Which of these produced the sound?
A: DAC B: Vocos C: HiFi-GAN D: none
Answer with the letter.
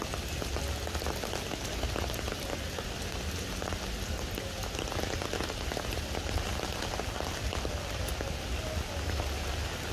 D